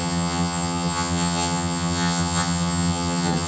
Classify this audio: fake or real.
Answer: fake